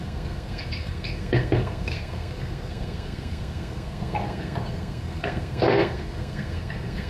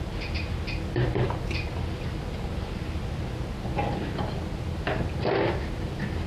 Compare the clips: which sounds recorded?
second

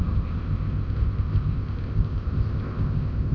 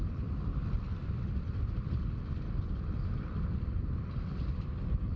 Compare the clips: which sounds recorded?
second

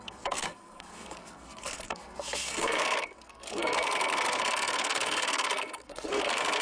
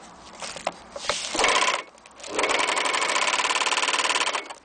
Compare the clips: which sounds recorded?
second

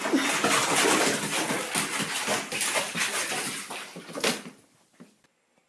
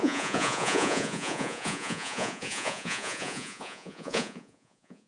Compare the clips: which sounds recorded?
first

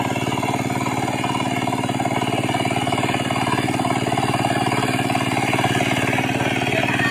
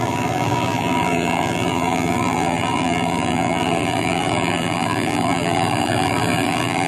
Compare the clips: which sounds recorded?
first